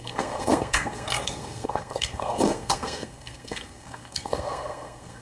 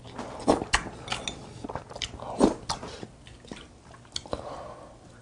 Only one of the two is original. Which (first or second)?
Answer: second